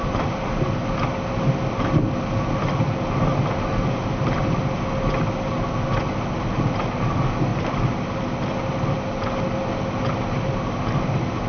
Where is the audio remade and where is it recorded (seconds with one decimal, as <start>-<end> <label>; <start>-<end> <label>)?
0.0-11.5 recorded